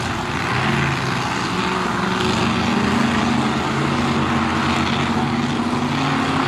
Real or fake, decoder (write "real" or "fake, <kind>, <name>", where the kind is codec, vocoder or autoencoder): real